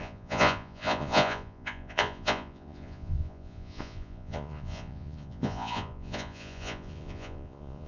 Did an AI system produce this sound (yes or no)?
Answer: yes